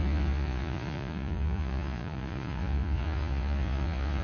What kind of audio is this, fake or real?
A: fake